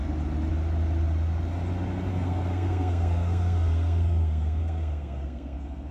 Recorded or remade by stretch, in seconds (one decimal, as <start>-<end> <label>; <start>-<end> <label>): 0.0-2.1 recorded; 2.1-5.9 remade